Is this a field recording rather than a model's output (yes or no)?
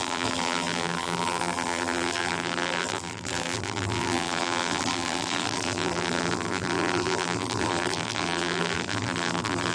no